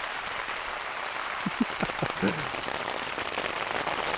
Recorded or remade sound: recorded